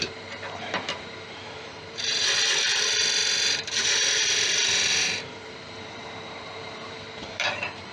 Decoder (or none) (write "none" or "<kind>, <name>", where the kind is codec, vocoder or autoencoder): vocoder, BigVGAN v2